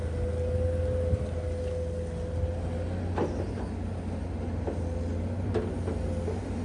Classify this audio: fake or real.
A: real